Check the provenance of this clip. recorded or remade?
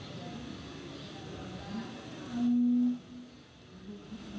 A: recorded